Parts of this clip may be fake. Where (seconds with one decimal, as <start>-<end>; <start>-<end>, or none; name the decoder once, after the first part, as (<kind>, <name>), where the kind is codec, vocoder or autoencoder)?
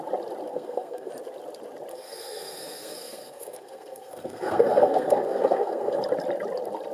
0.5-1.1 (codec, SNAC); 1.9-6.0